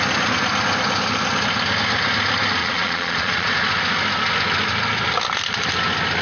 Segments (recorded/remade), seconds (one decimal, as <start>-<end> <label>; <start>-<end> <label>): 0.0-2.6 recorded; 2.6-3.5 remade; 3.5-6.2 recorded